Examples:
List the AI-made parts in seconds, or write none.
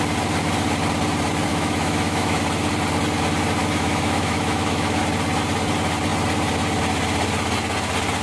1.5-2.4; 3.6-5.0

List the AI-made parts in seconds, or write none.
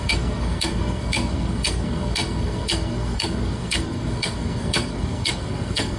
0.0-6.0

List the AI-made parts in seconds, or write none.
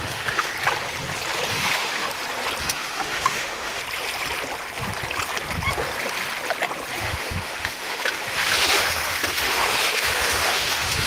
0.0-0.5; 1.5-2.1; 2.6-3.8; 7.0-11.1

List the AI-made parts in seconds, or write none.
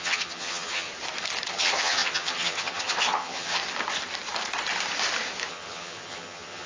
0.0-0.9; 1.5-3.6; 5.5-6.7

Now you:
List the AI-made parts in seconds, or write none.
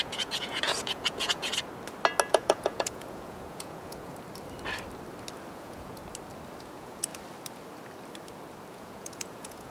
0.0-1.5; 2.3-4.1; 5.5-6.0; 6.6-7.1; 8.7-9.7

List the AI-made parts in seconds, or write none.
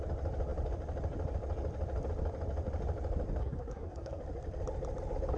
3.4-4.2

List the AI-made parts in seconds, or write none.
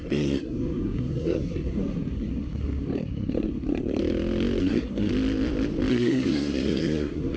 0.0-4.0; 4.6-5.1; 5.9-7.4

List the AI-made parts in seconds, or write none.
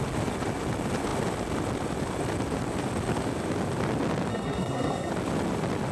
4.3-5.1